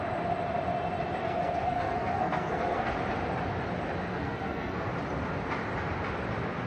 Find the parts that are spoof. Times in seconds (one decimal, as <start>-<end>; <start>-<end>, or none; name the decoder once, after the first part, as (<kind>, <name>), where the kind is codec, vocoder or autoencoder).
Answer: 1.2-2.9 (codec, SNAC); 4.1-4.9